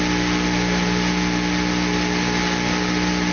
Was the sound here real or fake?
real